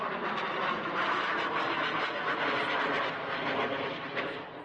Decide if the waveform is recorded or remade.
recorded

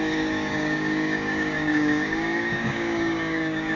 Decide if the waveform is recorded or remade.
remade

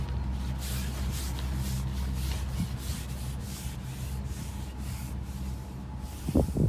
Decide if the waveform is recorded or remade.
recorded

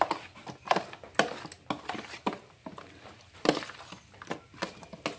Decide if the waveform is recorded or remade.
recorded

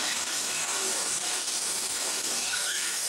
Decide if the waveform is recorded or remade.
remade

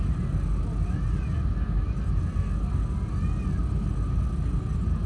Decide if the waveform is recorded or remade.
recorded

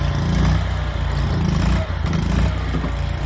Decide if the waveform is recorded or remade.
recorded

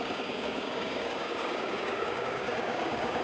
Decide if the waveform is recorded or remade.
remade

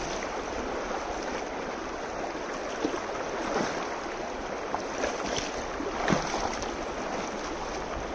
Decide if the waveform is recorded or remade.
recorded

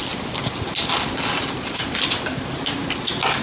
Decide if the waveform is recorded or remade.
recorded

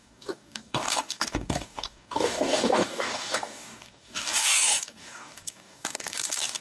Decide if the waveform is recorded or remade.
remade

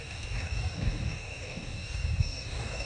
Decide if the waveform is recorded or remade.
remade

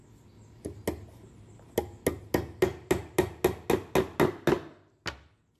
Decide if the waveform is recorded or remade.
recorded